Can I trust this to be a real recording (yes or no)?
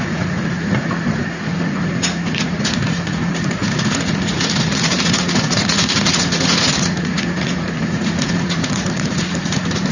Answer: no